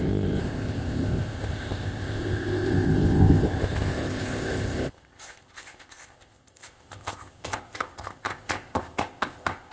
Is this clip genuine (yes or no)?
no